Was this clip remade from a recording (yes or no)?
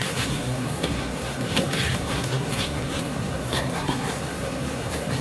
yes